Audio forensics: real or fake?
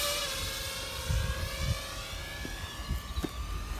real